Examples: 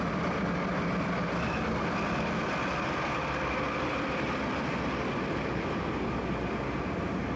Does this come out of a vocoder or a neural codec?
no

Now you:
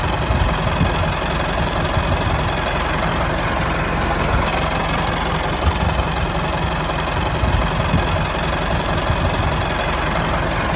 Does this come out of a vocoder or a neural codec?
no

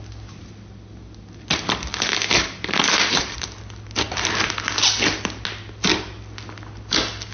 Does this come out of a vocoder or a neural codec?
no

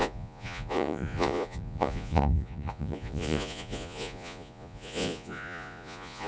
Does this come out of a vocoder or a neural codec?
yes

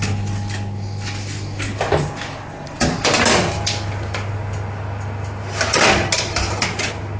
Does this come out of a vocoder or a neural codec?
no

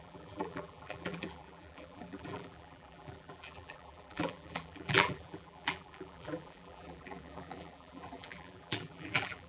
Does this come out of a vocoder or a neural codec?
yes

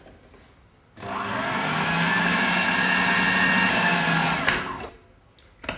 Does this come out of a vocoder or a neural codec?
no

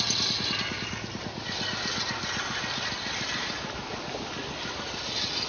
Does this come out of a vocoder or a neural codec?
no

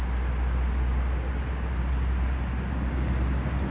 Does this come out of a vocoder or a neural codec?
no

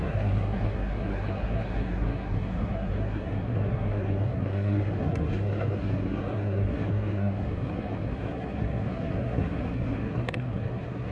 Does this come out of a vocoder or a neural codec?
yes